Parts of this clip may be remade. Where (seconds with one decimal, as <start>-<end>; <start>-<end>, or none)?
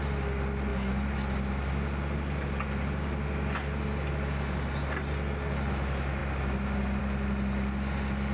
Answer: none